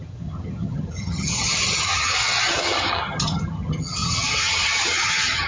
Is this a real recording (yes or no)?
no